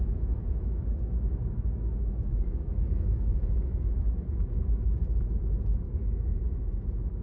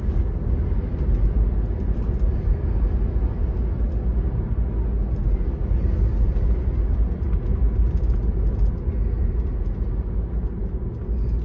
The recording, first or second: second